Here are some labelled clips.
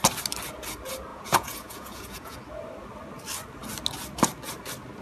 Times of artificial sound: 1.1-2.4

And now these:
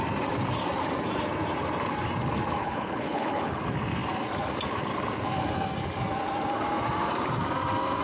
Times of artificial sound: 2.6-3.6

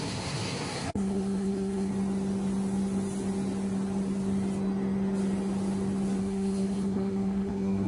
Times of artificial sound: 0.0-1.9; 6.2-7.9

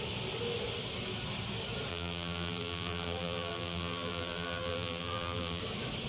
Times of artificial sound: 1.9-5.6

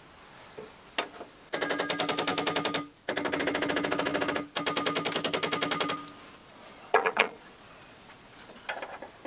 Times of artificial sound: 6.4-8.6

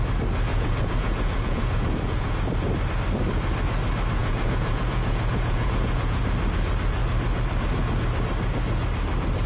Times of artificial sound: 0.5-2.4; 4.2-6.2

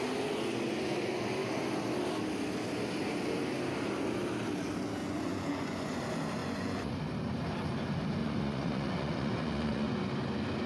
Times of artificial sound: 5.0-6.0; 6.4-6.9; 8.2-10.0